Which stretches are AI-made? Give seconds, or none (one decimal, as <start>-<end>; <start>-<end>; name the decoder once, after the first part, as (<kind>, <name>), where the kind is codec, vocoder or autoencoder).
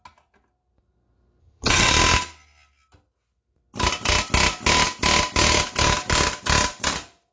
1.4-1.9 (vocoder, HiFi-GAN)